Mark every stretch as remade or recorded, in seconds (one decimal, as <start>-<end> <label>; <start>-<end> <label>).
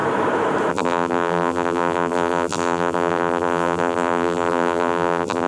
0.0-0.7 recorded; 0.7-5.5 remade